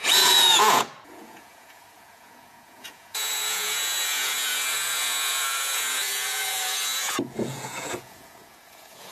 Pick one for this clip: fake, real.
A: fake